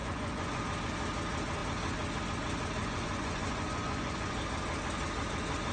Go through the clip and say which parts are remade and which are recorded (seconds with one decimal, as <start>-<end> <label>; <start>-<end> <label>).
0.0-0.6 remade; 0.6-2.8 recorded; 2.8-4.4 remade; 4.4-5.7 recorded